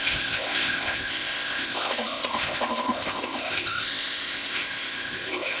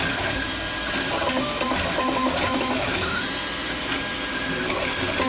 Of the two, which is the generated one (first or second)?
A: first